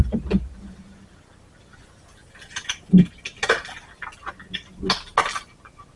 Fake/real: real